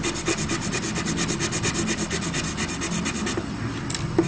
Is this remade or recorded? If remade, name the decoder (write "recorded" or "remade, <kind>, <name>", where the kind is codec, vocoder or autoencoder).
recorded